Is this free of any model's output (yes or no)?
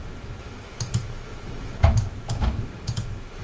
no